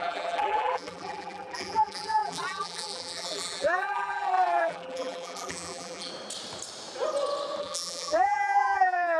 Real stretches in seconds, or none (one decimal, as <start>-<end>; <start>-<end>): 6.1-7.6

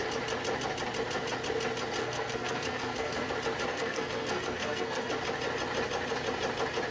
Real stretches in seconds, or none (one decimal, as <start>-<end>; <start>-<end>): 0.0-2.0; 3.3-3.7; 5.1-6.9

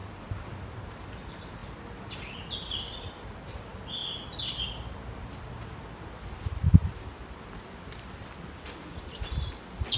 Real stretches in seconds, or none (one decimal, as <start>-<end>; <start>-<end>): 0.6-10.0

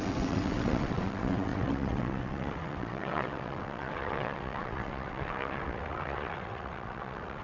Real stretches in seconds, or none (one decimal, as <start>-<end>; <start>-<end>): none

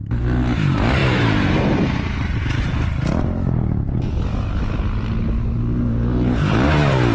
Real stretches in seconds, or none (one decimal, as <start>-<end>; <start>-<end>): 0.0-1.0; 1.6-7.1